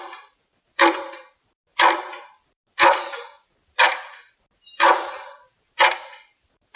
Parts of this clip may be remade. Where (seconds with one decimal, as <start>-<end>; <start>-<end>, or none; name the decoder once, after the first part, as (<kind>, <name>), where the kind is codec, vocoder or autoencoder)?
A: none